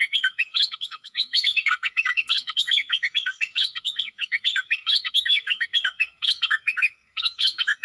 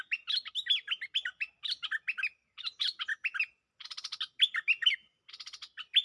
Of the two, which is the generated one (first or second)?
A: first